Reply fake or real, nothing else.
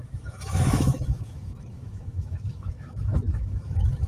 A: fake